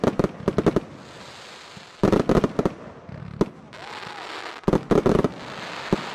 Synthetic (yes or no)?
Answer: no